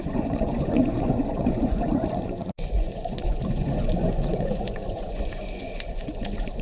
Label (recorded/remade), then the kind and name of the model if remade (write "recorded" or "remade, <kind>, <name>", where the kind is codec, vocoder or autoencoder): remade, vocoder, Vocos